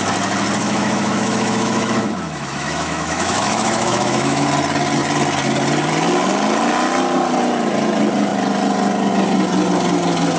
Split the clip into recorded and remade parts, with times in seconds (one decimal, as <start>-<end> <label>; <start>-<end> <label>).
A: 0.0-0.6 recorded; 0.6-4.5 remade; 4.5-10.4 recorded